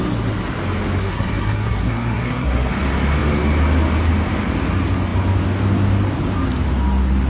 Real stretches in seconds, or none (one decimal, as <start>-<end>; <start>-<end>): 0.0-1.0; 2.7-7.3